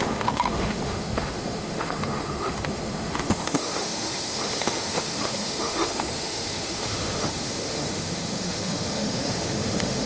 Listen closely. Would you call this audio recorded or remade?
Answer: remade